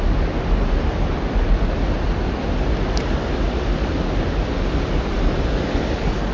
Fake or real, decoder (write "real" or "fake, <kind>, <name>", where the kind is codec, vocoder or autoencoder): real